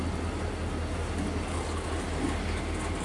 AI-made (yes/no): no